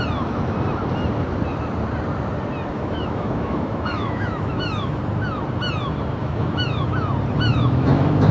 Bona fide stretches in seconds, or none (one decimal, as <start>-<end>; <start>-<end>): 0.0-2.7; 5.0-6.2; 6.9-7.5